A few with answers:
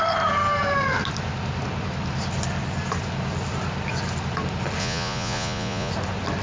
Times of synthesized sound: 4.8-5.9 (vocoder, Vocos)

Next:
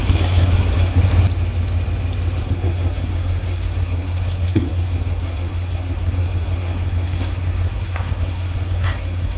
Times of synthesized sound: 0.0-1.1 (codec, SNAC); 2.4-9.4

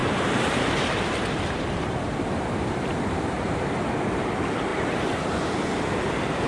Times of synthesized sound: 0.0-3.9 (vocoder, BigVGAN v2)

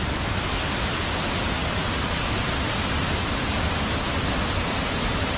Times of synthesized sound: none

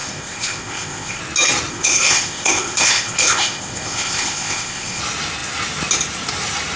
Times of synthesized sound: 0.0-1.2 (codec, ZipCodec); 1.7-5.0